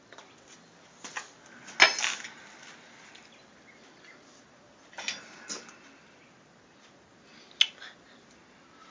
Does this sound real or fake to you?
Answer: real